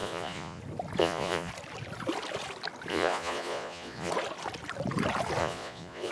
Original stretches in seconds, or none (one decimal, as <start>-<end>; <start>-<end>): 0.6-1.0; 1.5-2.9; 4.1-5.4